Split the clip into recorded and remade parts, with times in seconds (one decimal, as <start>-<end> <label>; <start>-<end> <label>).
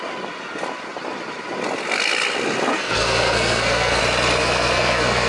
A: 0.0-2.7 recorded; 2.7-4.0 remade; 4.0-4.4 recorded; 4.4-5.3 remade